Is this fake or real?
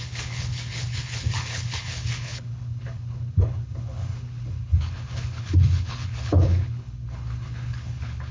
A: fake